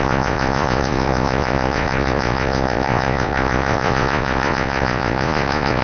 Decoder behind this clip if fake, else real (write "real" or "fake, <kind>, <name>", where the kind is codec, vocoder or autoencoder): fake, vocoder, Vocos